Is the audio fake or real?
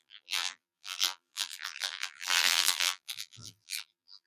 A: fake